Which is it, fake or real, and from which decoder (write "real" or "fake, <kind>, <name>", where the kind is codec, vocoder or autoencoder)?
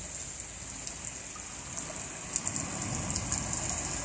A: real